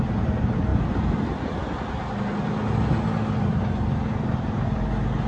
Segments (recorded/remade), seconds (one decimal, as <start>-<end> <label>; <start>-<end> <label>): 0.0-5.3 recorded